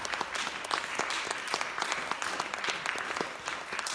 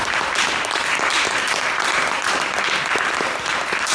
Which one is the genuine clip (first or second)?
first